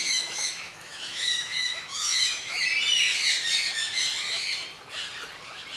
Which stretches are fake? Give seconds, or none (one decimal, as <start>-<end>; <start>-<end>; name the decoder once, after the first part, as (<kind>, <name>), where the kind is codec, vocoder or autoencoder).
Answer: 0.0-2.6 (autoencoder, DAC-VAE)